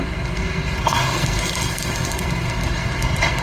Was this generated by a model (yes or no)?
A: yes